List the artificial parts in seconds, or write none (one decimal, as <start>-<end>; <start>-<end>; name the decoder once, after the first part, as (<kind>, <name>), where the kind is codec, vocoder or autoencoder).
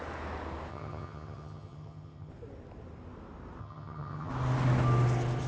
0.7-2.3 (vocoder, HiFi-GAN); 3.6-4.3